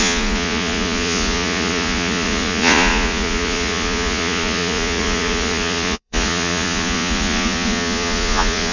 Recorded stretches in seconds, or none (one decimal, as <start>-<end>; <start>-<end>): none